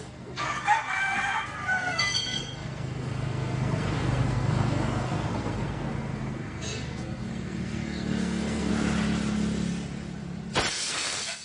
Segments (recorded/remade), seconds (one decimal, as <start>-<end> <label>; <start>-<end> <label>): 0.0-8.7 remade; 8.7-10.7 recorded; 10.7-11.4 remade